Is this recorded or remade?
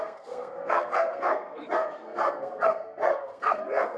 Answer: remade